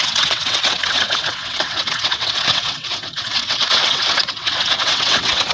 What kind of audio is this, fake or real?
fake